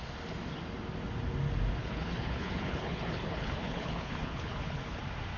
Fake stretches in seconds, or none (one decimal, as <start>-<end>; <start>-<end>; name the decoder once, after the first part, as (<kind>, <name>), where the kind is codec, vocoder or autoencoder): 1.8-5.0 (codec, HILCodec)